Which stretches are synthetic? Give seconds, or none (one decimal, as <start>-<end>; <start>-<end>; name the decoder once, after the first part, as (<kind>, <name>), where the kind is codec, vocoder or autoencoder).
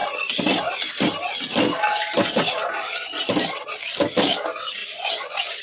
4.8-5.6 (vocoder, Vocos)